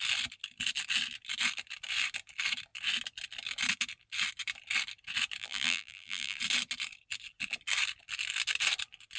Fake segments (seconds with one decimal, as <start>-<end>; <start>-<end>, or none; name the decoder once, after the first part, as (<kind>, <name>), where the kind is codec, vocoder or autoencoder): 5.4-6.4 (vocoder, BigVGAN v2)